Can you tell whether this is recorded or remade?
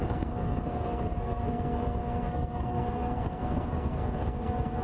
remade